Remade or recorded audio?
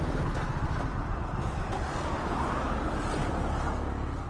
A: recorded